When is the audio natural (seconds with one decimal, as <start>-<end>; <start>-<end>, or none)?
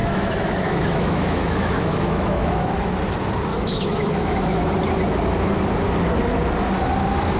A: 2.9-3.5; 4.7-7.4